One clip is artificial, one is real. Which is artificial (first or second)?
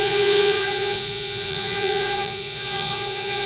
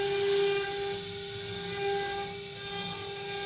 first